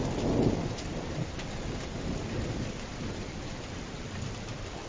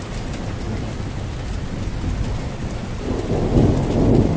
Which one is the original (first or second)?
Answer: second